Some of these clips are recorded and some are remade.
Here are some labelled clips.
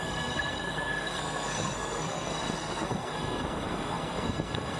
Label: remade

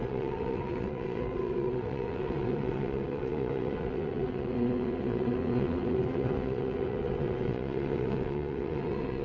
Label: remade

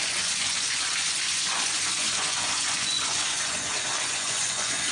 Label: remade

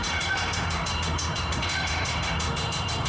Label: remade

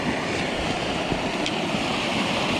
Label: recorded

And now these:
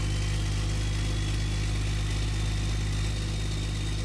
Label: recorded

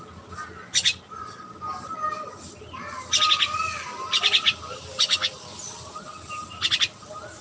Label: recorded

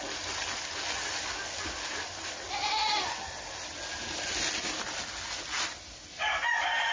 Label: recorded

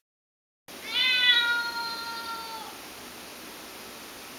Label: recorded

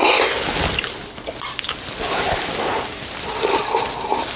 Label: recorded